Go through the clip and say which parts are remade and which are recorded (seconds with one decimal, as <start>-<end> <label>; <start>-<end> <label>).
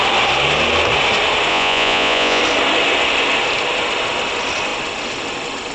0.0-1.5 recorded; 1.5-2.4 remade; 2.4-5.7 recorded